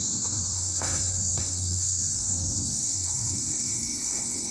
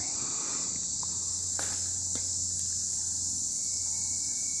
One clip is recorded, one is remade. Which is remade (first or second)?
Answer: first